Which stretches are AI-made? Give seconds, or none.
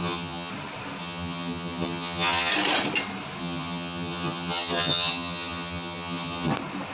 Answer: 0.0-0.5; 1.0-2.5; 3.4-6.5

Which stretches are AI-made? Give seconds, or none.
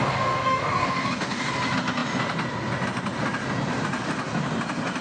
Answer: 0.0-1.5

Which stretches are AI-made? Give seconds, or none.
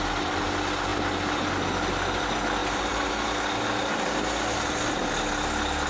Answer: 2.6-3.1